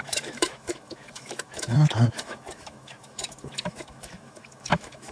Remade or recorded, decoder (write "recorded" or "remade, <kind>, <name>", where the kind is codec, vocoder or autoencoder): remade, autoencoder, DAC-VAE